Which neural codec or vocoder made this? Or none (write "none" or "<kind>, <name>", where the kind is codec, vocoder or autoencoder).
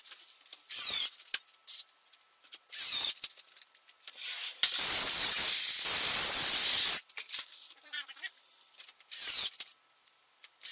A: vocoder, BigVGAN v2